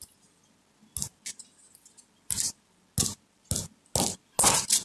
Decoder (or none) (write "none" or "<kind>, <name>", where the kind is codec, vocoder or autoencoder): none